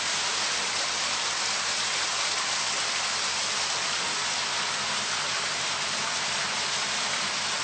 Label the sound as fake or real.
real